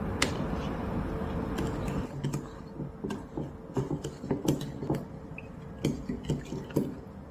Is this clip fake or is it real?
real